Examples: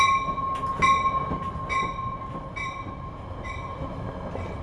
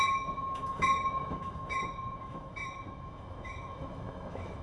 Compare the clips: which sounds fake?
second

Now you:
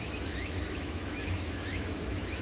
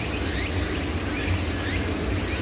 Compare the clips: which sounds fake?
first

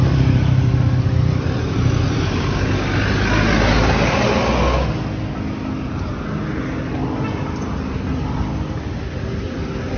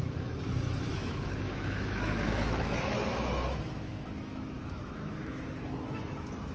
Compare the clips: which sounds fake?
second